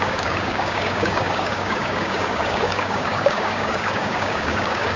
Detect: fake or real fake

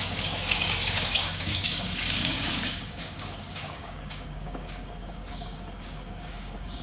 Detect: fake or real fake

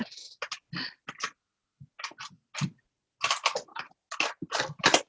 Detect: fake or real real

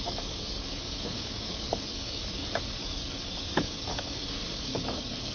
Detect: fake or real fake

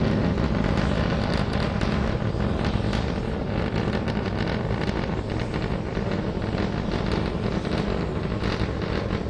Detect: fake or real real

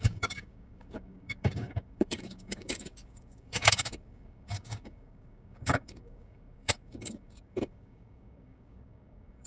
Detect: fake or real fake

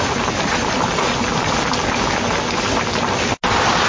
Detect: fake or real real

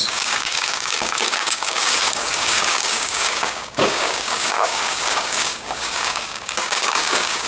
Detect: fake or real fake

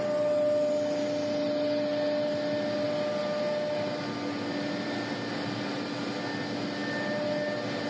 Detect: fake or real real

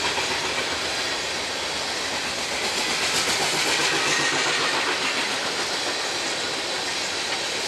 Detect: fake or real real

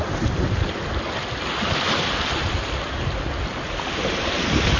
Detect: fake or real real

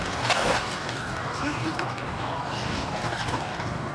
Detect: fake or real fake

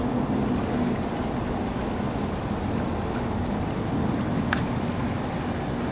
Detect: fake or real real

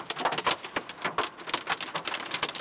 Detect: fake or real real